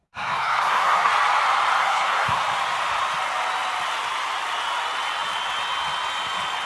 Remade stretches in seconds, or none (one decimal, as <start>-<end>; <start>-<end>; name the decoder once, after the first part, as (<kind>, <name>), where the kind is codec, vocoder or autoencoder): 0.0-1.1 (codec, SNAC); 1.8-2.4